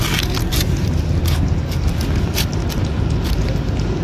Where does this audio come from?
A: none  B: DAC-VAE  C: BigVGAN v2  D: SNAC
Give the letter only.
A